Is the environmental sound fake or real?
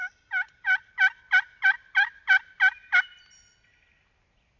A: real